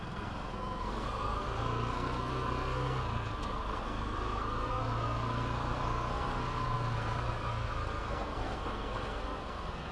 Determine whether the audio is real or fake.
fake